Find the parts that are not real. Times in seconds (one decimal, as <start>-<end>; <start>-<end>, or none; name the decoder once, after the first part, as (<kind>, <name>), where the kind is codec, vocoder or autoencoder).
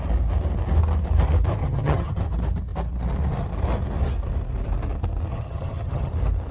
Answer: 1.6-2.2 (vocoder, HiFi-GAN); 5.3-6.1